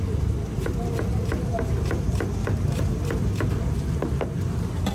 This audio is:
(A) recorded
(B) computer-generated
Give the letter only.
A